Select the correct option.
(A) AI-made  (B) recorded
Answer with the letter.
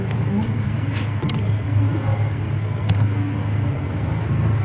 A